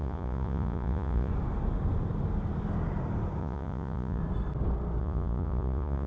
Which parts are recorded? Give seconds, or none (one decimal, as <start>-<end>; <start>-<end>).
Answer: 1.3-3.4; 4.2-5.0